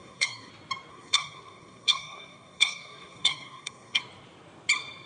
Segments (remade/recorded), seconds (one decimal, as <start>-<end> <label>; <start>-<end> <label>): 0.0-0.5 remade; 0.5-0.9 recorded; 0.9-4.0 remade; 4.0-5.1 recorded